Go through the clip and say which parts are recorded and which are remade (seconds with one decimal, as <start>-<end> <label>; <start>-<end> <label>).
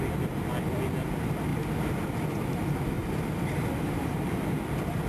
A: 0.0-1.5 recorded; 1.5-2.1 remade; 2.1-3.0 recorded; 3.0-4.2 remade; 4.2-5.1 recorded